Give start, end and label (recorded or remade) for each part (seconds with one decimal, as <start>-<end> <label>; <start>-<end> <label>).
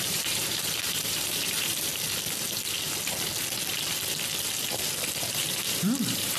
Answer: 0.0-1.9 remade; 1.9-5.3 recorded; 5.3-6.4 remade